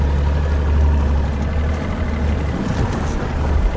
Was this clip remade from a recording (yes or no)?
no